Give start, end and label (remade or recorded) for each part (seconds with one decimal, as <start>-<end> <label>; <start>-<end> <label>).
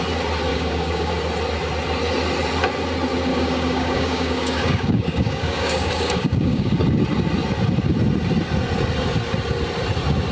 0.0-0.5 recorded; 0.5-1.1 remade; 1.1-3.3 recorded; 3.3-6.7 remade; 6.7-10.3 recorded